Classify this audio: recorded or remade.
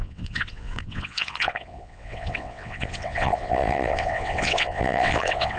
remade